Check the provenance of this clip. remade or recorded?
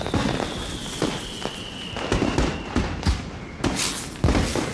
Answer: recorded